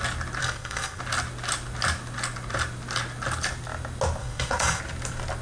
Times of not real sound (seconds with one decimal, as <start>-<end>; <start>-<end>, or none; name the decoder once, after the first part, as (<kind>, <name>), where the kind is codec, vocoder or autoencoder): 0.4-1.0 (codec, SNAC); 4.2-4.8